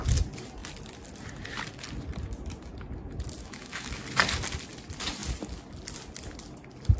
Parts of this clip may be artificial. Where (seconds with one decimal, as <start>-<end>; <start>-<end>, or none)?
3.4-4.0